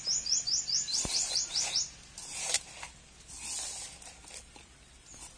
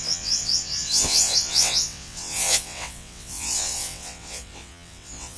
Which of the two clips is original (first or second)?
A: first